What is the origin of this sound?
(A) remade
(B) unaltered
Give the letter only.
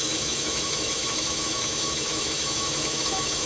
A